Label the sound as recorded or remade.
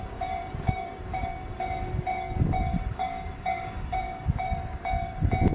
remade